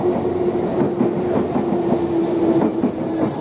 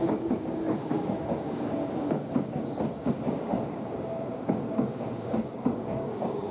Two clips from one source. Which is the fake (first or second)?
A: second